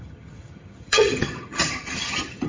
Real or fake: fake